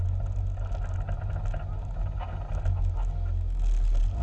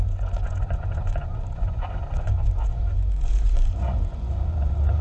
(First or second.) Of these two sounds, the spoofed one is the second